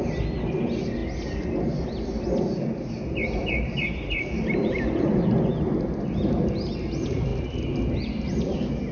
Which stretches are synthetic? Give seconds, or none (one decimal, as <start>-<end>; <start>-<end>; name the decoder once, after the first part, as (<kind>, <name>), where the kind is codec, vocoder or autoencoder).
3.4-5.3 (vocoder, BigVGAN v2)